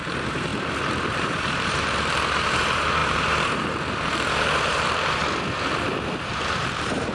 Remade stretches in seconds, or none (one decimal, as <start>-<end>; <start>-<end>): 0.0-0.5; 1.0-5.2; 6.2-7.1